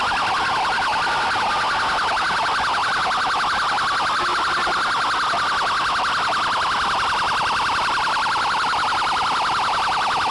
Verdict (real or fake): real